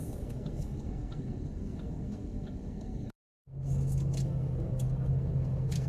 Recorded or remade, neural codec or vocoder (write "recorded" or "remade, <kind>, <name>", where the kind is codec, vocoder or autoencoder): remade, codec, SNAC